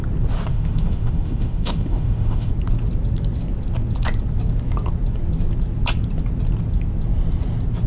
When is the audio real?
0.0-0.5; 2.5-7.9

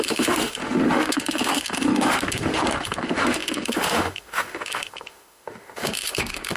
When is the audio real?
none

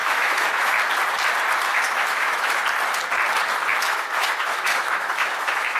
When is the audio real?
0.8-1.7; 2.6-3.7

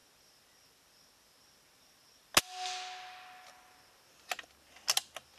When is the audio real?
0.0-5.4